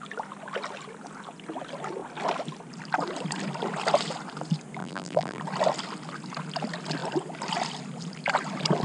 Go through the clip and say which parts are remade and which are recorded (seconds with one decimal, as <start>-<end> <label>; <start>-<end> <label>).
0.0-4.8 recorded; 4.8-5.4 remade; 5.4-8.8 recorded